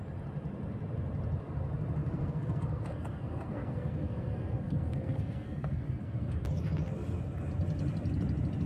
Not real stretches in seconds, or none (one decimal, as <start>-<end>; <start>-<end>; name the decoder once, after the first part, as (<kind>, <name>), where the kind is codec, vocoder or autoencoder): 2.0-6.3 (codec, SNAC)